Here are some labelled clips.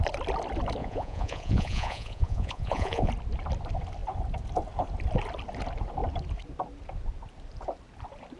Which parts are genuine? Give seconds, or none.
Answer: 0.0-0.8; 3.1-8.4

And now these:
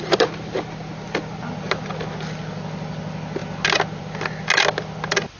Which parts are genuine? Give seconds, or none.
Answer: 0.0-5.4

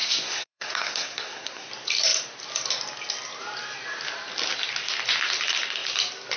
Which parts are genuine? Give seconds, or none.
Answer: 1.7-6.4

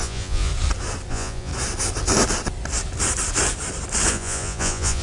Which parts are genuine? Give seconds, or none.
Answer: 0.5-1.1; 1.5-4.1

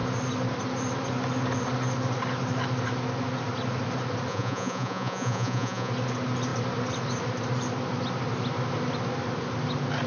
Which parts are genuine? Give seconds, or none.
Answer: 0.0-4.3; 5.9-10.1

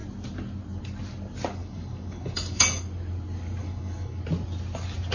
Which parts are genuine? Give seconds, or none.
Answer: 0.0-1.6; 2.8-3.6; 4.2-5.1

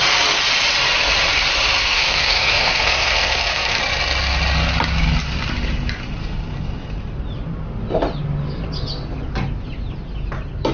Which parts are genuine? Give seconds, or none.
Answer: 0.0-1.8; 3.8-10.7

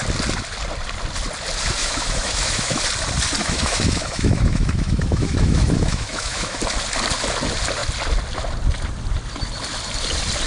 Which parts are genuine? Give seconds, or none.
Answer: 0.0-1.8; 2.8-3.4; 6.6-10.5